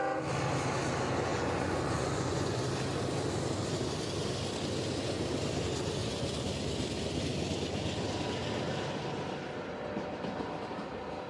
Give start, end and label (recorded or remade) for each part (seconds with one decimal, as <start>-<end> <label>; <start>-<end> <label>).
0.0-1.3 recorded; 1.3-2.6 remade; 2.6-6.0 recorded; 6.0-6.5 remade; 6.5-11.3 recorded